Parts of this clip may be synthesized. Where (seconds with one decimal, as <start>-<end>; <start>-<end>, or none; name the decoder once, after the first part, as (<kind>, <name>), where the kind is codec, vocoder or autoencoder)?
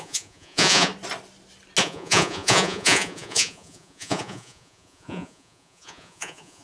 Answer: 0.0-0.9 (vocoder, Vocos); 1.8-6.6